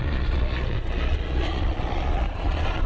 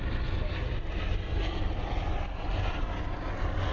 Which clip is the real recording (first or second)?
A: second